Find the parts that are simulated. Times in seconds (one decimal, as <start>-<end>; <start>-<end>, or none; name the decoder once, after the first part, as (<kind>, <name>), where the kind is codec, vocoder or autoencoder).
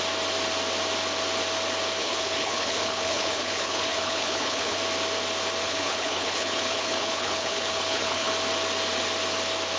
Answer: 2.0-4.8 (codec, HILCodec); 5.6-8.3